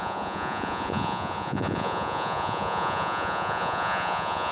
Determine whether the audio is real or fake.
fake